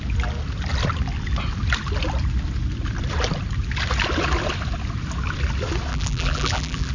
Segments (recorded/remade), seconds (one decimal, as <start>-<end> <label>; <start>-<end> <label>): 0.0-5.9 recorded; 5.9-6.9 remade